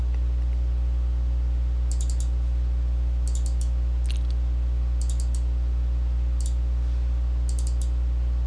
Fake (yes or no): no